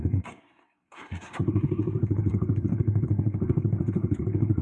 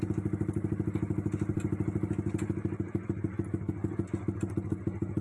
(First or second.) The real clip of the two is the second